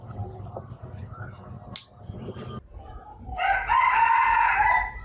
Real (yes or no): yes